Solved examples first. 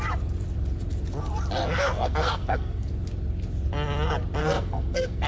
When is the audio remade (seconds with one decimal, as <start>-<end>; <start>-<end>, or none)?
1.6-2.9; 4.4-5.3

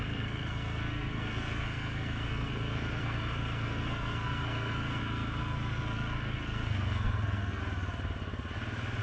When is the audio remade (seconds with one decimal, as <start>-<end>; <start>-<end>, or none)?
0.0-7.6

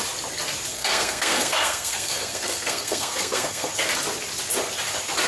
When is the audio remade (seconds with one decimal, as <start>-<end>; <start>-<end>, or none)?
0.7-3.7